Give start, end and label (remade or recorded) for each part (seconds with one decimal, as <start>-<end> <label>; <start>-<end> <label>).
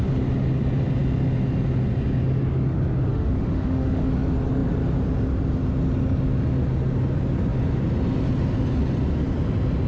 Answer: 0.0-3.1 recorded; 3.1-4.1 remade; 4.1-9.9 recorded